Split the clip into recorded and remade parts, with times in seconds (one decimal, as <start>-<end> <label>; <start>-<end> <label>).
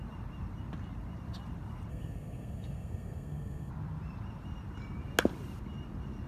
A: 0.0-1.9 recorded; 1.9-3.7 remade; 3.7-6.3 recorded